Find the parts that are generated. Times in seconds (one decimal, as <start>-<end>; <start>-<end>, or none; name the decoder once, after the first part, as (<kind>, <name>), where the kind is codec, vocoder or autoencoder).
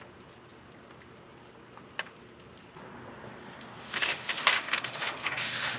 3.8-5.8 (autoencoder, DAC-VAE)